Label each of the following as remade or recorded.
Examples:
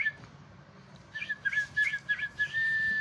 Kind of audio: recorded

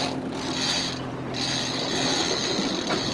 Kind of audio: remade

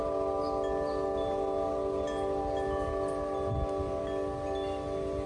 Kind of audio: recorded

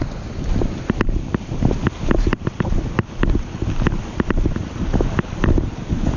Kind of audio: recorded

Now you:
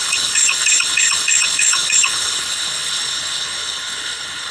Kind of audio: remade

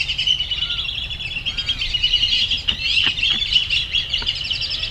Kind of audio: recorded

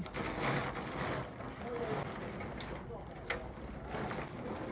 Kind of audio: recorded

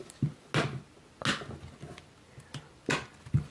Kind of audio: recorded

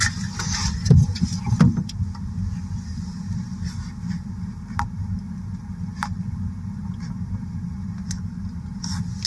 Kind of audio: recorded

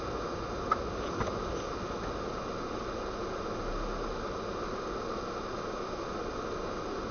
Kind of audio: recorded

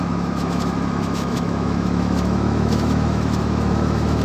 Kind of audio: remade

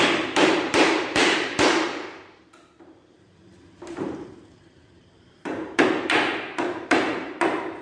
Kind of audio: remade